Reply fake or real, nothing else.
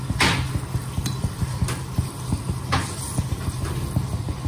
real